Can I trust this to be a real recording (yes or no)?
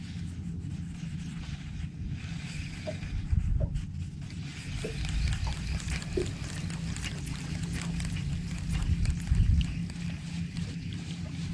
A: yes